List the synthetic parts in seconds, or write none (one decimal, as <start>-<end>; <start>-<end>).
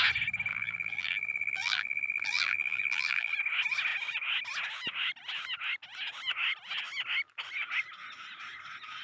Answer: 0.5-3.3